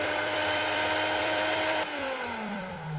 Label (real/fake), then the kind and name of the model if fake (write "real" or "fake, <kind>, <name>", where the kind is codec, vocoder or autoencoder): fake, vocoder, BigVGAN v2